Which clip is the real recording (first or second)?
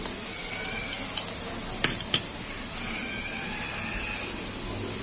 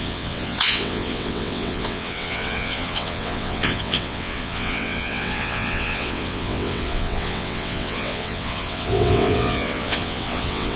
first